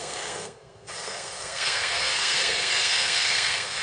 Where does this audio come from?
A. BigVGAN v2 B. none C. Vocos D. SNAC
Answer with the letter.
D